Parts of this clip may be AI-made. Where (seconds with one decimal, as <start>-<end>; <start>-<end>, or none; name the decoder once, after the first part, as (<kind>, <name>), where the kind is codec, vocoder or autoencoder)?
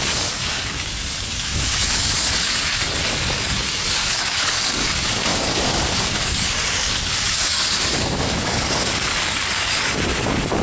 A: 0.0-10.6 (codec, DAC)